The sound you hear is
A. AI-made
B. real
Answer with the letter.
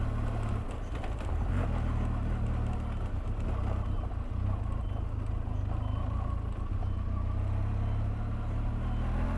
B